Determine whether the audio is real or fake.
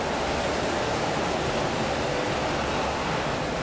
real